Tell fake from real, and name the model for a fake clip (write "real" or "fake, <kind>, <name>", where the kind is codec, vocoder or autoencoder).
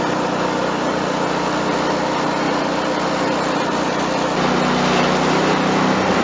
real